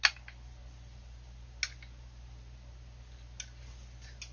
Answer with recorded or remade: recorded